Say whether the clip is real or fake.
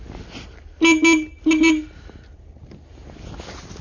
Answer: real